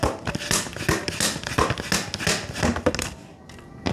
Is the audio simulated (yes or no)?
no